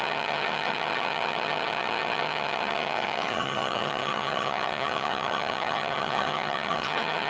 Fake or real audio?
fake